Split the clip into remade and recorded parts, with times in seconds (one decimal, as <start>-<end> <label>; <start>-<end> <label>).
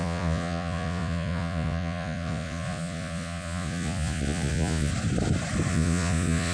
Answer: 0.0-4.9 remade; 4.9-5.7 recorded; 5.7-6.5 remade